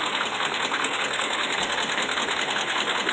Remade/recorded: remade